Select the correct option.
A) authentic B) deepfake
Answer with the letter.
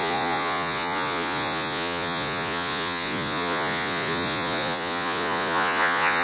B